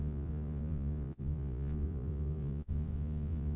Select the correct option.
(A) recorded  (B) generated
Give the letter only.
B